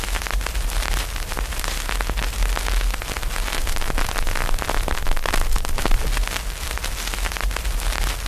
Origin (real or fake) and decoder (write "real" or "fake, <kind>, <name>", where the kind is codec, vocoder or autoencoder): real